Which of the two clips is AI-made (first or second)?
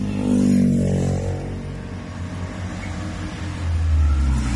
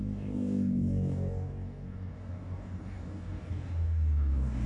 second